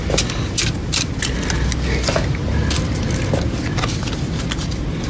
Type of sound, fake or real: real